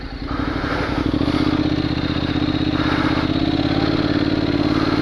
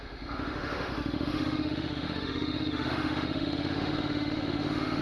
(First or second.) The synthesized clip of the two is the second